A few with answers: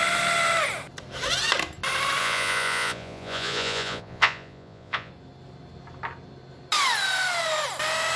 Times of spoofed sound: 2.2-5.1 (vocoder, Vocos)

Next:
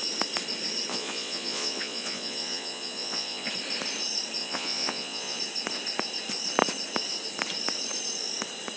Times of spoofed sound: 0.9-3.5 (vocoder, Vocos); 4.4-5.4

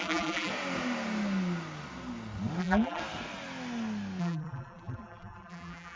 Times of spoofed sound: 0.0-0.5 (vocoder, BigVGAN v2); 2.6-3.0; 4.2-6.0

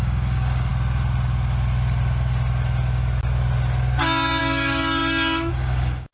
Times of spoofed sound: 0.0-0.7 (codec, DAC); 4.4-6.1